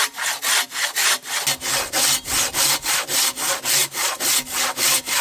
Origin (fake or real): real